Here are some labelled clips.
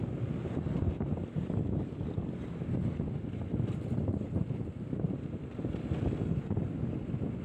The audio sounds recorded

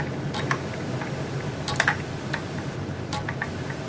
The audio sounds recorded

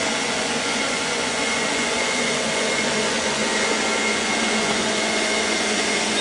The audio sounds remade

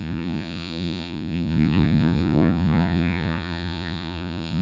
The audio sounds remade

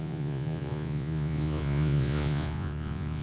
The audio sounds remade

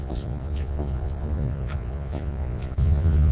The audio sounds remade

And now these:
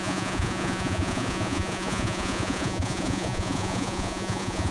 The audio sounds remade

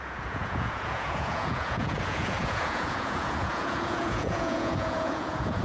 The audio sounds remade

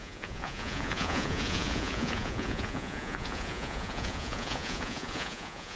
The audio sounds remade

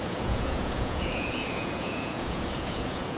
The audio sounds remade